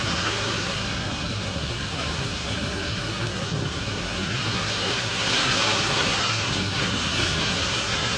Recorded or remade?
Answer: remade